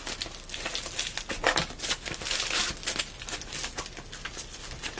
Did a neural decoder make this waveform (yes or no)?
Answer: no